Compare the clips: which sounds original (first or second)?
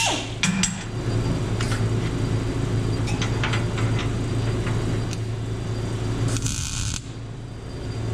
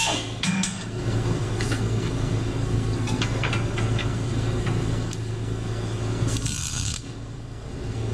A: first